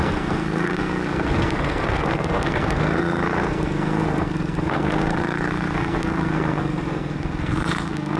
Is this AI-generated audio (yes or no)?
yes